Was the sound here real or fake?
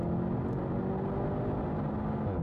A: real